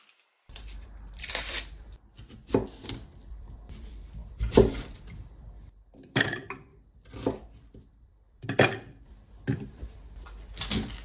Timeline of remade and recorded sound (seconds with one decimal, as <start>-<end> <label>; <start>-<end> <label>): 0.0-2.4 remade; 2.4-3.3 recorded; 3.3-6.7 remade; 6.7-7.5 recorded; 7.5-11.0 remade